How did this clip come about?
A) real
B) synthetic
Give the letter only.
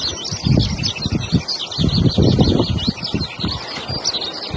A